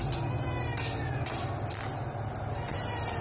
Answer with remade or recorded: recorded